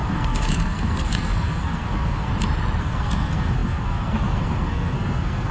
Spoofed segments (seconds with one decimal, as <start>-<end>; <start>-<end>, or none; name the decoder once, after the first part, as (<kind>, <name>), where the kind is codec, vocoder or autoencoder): 0.0-2.3 (codec, SNAC); 2.8-5.5